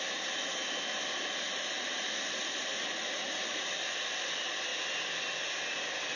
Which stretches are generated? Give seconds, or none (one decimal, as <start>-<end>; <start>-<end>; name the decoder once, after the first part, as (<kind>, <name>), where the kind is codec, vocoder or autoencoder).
none